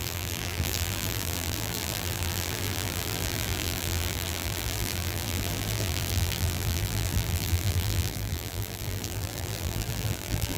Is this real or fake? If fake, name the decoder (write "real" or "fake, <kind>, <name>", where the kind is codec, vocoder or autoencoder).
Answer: fake, vocoder, BigVGAN v2